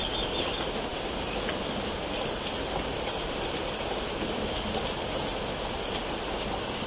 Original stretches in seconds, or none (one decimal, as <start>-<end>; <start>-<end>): 0.0-6.9